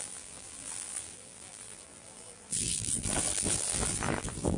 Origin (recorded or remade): remade